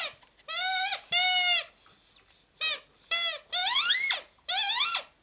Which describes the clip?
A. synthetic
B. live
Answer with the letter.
B